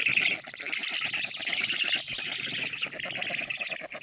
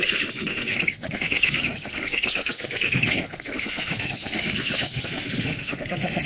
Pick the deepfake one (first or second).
second